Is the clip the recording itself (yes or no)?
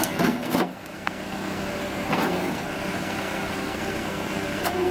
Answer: no